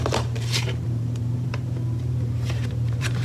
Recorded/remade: remade